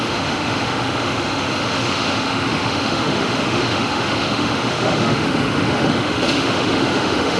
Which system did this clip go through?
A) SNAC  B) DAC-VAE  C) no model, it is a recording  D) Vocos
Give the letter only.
B